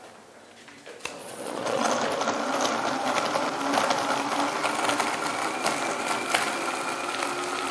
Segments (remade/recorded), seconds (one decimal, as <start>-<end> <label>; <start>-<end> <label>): 0.0-1.2 recorded; 1.2-1.9 remade; 1.9-7.7 recorded

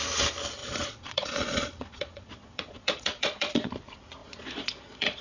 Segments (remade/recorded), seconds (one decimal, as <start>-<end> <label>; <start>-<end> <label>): 0.0-0.6 recorded; 0.6-3.7 remade; 3.7-4.2 recorded; 4.2-5.2 remade